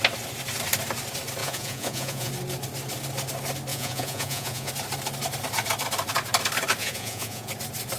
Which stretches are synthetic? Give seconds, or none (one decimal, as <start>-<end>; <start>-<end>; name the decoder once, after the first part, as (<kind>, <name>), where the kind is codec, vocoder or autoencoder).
1.4-2.3 (vocoder, Vocos); 3.7-4.7; 6.8-7.5